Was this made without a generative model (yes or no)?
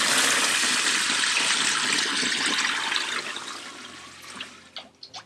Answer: yes